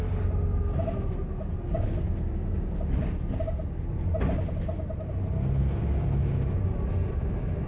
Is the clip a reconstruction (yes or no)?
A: no